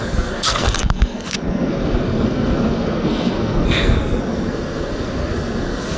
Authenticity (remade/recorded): remade